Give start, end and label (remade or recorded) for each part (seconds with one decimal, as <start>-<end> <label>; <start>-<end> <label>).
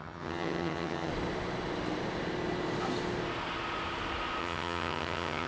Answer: 0.0-1.1 remade; 1.1-4.4 recorded; 4.4-5.5 remade